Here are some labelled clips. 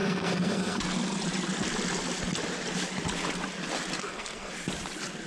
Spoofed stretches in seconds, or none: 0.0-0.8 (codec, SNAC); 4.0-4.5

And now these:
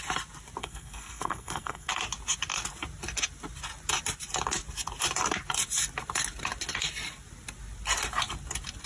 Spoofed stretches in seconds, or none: 0.6-1.9 (codec, SNAC)